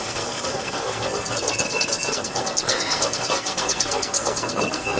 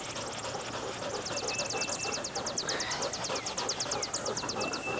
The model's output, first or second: first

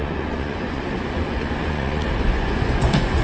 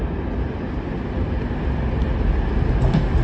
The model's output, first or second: first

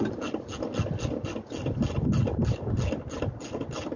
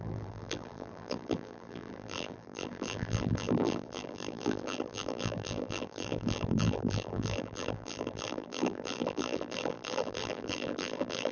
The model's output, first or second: second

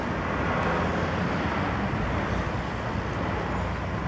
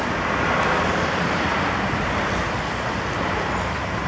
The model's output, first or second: second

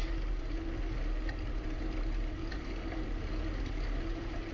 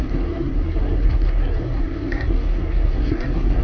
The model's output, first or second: second